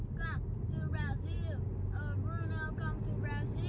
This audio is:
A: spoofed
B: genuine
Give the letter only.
B